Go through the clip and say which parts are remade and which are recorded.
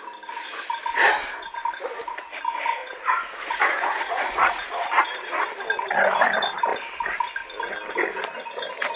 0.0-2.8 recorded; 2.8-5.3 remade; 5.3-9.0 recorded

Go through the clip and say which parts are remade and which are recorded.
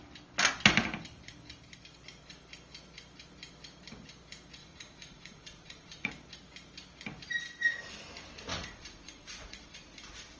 0.0-4.6 recorded; 4.6-6.1 remade; 6.1-8.5 recorded; 8.5-10.4 remade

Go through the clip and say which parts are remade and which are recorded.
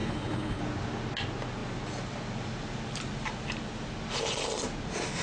0.0-0.6 remade; 0.6-5.2 recorded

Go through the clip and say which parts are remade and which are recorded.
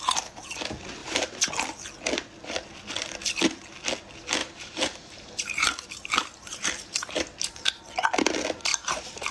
0.0-1.0 recorded; 1.0-1.5 remade; 1.5-4.4 recorded; 4.4-7.8 remade; 7.8-8.7 recorded; 8.7-9.3 remade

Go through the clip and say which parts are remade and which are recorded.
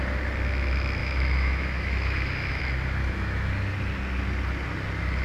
0.0-1.0 recorded; 1.0-2.6 remade; 2.6-3.0 recorded; 3.0-3.5 remade; 3.5-5.2 recorded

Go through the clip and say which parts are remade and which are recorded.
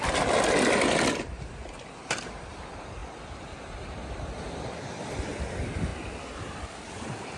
0.0-7.4 recorded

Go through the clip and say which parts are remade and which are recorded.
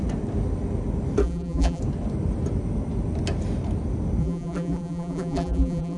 0.0-1.2 recorded; 1.2-1.8 remade; 1.8-4.2 recorded; 4.2-6.0 remade